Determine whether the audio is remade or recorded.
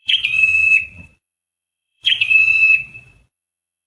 remade